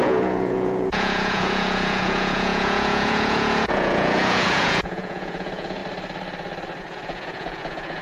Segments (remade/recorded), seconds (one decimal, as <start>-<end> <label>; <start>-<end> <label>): 0.0-5.8 remade; 5.8-6.8 recorded; 6.8-8.0 remade